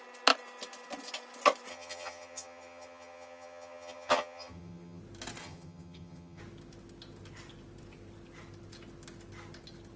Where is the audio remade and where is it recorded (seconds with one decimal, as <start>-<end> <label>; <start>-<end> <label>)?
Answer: 0.0-1.7 recorded; 1.7-5.0 remade; 5.0-5.4 recorded; 5.4-6.4 remade; 6.4-10.0 recorded